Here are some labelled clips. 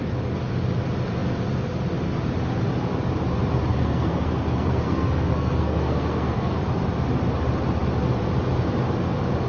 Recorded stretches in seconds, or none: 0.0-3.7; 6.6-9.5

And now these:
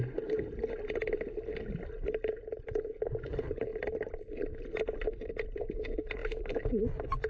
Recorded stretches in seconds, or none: 0.0-7.3

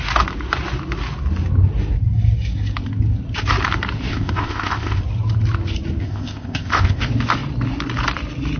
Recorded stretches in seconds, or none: 0.0-4.1; 5.0-6.0; 7.0-8.6

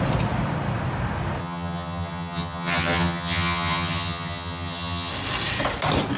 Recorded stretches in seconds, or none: 0.0-1.4; 5.1-6.2

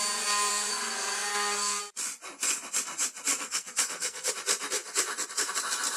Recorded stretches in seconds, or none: 0.0-0.5; 1.8-3.3; 4.3-6.0

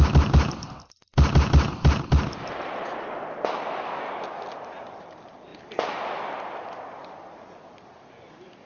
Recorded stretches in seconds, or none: 0.0-8.7